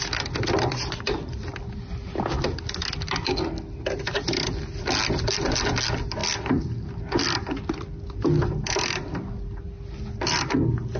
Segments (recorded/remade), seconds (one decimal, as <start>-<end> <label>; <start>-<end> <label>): 0.0-11.0 recorded